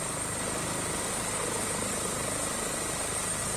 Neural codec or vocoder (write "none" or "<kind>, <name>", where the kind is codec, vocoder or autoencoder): vocoder, BigVGAN v2